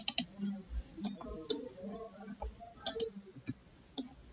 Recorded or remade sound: recorded